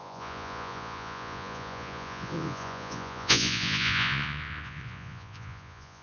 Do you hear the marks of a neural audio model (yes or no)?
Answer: yes